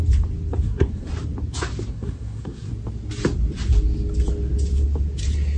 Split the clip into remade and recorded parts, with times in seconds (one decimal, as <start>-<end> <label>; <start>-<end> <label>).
0.0-0.6 recorded; 0.6-1.1 remade; 1.1-1.9 recorded; 1.9-2.7 remade; 2.7-5.6 recorded